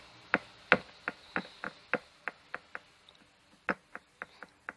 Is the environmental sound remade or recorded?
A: recorded